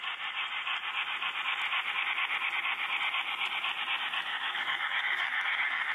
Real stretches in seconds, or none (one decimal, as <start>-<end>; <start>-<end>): 0.0-4.3